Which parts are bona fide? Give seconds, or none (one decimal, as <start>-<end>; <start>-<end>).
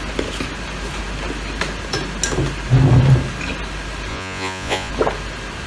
0.0-4.1; 4.9-5.7